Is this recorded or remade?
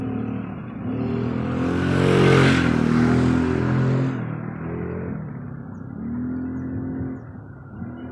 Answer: recorded